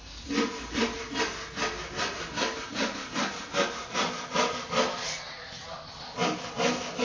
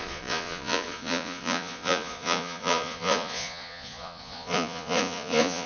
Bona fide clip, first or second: first